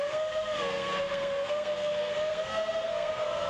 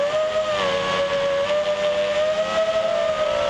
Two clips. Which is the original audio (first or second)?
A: second